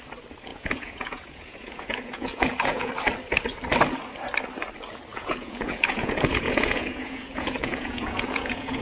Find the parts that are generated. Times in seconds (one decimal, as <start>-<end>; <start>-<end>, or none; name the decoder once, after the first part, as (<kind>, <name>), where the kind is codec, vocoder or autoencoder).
0.5-2.9 (vocoder, Vocos); 5.1-8.8